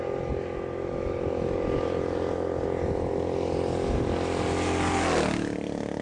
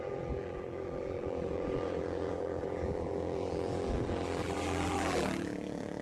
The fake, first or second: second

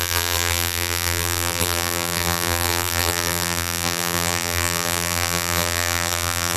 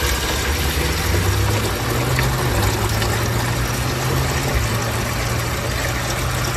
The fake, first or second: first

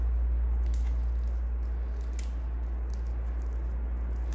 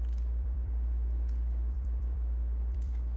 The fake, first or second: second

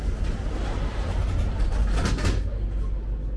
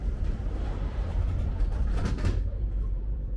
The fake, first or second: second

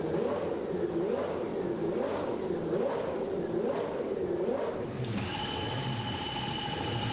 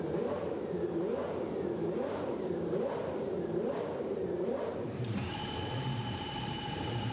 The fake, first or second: second